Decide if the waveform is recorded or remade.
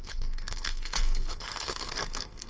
remade